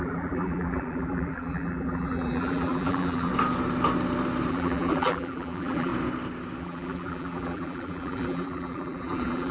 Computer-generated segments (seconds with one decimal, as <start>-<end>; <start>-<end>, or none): 0.0-3.3; 4.5-5.9; 6.6-9.5